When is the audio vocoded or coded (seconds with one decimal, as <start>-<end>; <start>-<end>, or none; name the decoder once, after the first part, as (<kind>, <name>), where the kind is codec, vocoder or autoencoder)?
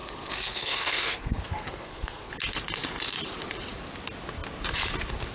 0.0-2.3 (codec, SNAC)